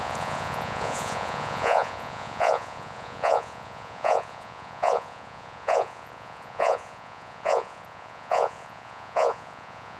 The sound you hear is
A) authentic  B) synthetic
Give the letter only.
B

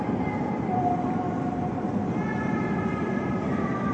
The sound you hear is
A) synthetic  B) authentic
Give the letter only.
B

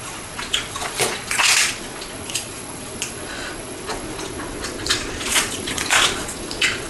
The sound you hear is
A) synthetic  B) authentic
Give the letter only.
A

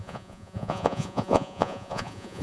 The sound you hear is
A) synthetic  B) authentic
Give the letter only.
A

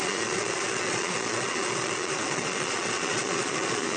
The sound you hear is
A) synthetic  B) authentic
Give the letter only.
A